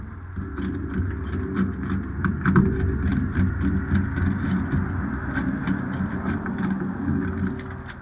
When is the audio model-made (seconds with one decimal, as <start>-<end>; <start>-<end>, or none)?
none